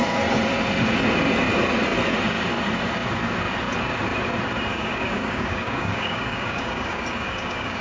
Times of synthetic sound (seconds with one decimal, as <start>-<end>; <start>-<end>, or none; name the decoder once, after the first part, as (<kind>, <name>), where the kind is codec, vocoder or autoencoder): 4.7-7.8 (codec, DAC)